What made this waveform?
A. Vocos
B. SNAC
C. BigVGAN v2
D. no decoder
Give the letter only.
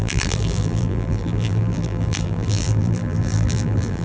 C